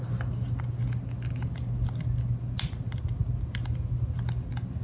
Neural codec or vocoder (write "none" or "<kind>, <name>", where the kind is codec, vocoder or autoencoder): none